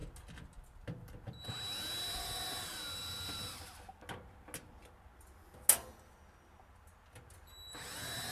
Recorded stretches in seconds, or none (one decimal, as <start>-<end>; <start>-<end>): 0.0-8.3